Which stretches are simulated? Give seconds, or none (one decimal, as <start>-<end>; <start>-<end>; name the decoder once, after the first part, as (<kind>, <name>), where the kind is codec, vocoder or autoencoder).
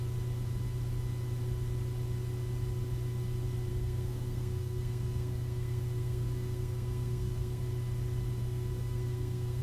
3.7-7.6 (codec, SNAC); 8.4-9.6